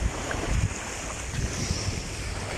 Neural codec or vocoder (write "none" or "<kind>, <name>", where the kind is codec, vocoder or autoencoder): none